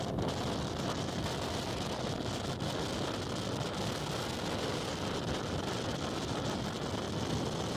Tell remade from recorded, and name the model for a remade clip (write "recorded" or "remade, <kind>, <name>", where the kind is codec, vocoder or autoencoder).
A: recorded